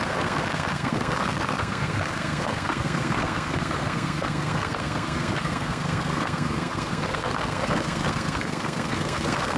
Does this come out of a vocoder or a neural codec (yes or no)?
yes